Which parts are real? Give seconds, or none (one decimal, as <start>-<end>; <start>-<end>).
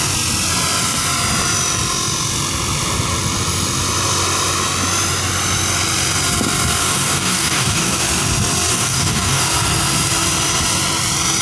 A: 0.0-6.8; 8.0-8.7; 9.4-11.4